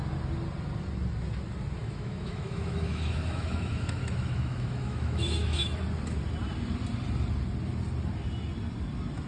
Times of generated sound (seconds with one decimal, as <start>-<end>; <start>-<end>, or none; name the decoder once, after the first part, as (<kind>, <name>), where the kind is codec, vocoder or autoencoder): 1.8-5.8 (autoencoder, DAC-VAE)